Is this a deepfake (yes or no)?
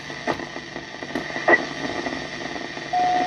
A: no